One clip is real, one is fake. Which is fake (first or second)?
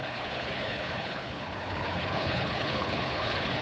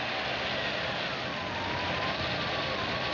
first